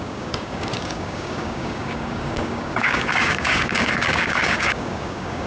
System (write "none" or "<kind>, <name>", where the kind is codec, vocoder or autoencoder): codec, DAC